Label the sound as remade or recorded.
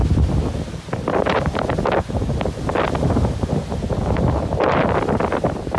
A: recorded